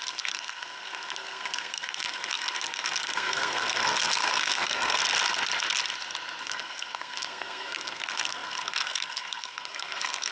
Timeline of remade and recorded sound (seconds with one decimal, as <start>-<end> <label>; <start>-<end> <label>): 0.0-5.0 remade; 5.0-6.4 recorded; 6.4-10.3 remade